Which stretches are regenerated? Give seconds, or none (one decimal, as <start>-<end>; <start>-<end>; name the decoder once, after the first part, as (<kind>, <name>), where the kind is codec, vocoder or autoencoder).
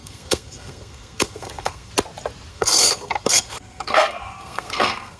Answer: 0.0-1.9 (codec, SNAC); 2.5-5.2